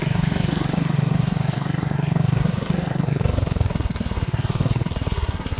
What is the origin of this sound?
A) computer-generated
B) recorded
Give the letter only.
A